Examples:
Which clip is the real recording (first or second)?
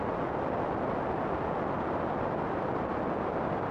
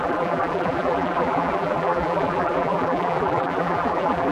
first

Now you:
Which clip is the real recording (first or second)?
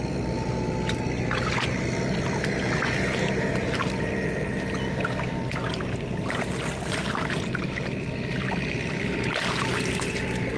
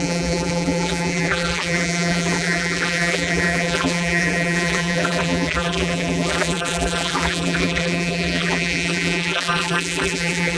first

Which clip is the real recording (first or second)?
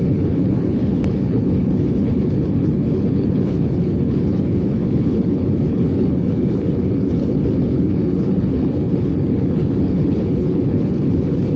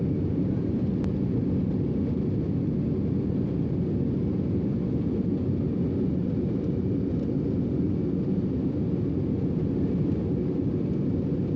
second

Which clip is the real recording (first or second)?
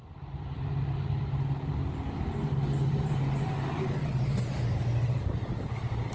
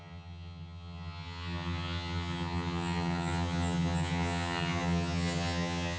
first